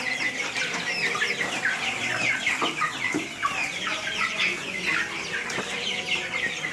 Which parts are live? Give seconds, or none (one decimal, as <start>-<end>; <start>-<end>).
0.0-3.6; 4.9-6.7